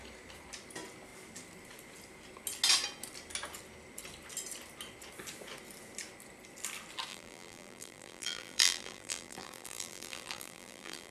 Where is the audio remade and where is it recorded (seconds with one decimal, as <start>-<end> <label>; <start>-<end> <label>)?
0.0-7.1 recorded; 7.1-11.1 remade